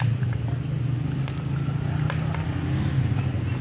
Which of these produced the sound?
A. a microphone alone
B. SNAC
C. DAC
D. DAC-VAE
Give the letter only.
A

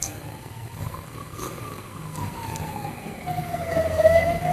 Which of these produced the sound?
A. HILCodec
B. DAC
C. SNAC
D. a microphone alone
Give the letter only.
C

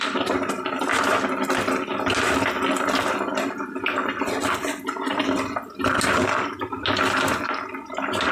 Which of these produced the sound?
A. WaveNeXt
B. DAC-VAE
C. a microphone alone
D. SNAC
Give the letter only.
C